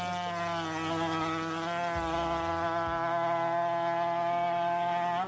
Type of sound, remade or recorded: recorded